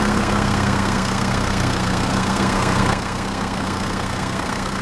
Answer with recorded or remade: remade